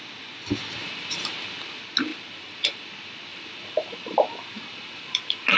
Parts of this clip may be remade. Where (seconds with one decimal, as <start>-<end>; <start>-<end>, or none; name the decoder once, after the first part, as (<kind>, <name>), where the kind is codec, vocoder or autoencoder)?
0.8-1.5 (vocoder, BigVGAN v2); 2.1-2.9; 3.3-5.6